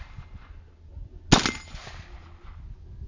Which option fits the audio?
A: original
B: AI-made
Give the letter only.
A